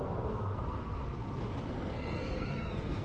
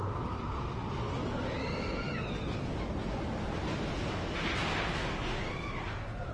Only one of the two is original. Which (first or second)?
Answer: second